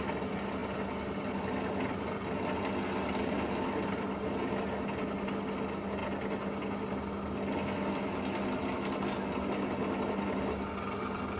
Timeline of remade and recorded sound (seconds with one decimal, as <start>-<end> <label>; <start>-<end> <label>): 0.0-11.4 recorded